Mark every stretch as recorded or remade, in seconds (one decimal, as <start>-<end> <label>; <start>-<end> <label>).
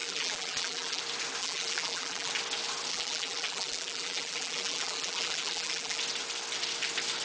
0.0-1.0 remade; 1.0-1.4 recorded; 1.4-2.3 remade; 2.3-2.9 recorded; 2.9-6.0 remade; 6.0-7.2 recorded